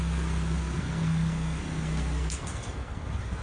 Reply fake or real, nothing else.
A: fake